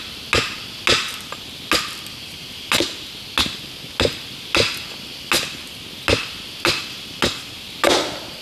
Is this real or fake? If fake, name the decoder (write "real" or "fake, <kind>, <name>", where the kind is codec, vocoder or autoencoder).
real